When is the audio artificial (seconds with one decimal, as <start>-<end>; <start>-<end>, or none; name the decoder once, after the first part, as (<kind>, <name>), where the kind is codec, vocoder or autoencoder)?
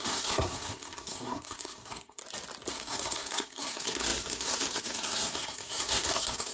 0.0-2.2 (codec, SNAC); 2.7-6.5